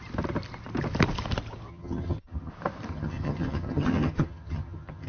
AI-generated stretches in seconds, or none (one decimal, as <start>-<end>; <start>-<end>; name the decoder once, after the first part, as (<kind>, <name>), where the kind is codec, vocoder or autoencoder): 1.7-2.5 (vocoder, HiFi-GAN); 2.9-5.1

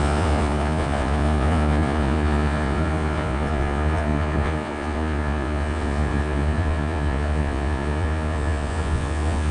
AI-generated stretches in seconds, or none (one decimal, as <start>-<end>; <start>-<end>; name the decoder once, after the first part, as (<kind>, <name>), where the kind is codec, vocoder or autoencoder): 0.0-9.5 (vocoder, Vocos)